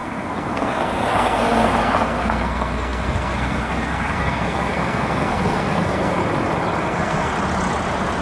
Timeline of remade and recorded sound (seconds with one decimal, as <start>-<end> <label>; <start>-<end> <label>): 0.0-6.2 remade; 6.2-6.8 recorded; 6.8-7.3 remade; 7.3-8.2 recorded